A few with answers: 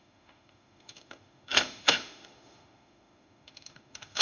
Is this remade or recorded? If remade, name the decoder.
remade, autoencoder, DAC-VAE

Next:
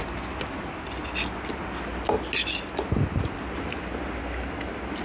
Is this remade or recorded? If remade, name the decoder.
recorded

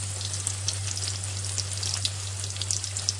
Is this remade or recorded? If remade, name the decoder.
recorded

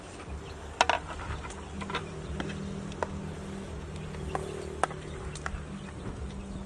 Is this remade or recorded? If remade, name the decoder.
recorded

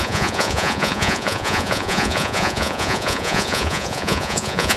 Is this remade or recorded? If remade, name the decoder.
remade, vocoder, Vocos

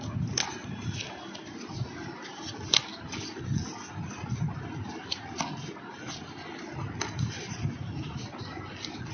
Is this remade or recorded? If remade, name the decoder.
recorded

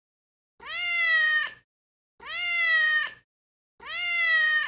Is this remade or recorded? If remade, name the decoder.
recorded